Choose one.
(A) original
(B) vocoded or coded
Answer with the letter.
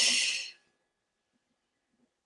A